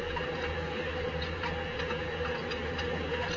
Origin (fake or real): real